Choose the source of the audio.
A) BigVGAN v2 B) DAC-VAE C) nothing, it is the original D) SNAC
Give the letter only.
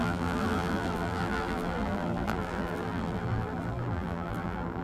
A